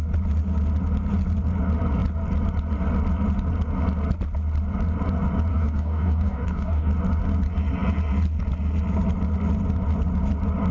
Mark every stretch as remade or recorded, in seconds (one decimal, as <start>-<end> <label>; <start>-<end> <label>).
0.0-5.5 recorded; 5.5-6.9 remade; 6.9-10.7 recorded